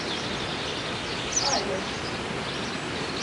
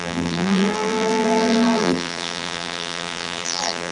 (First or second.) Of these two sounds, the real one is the first